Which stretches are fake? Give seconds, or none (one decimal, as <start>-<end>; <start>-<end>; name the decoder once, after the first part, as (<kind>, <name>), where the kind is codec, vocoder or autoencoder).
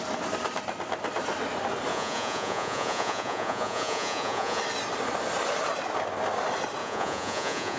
1.9-4.6 (vocoder, Vocos); 6.8-7.8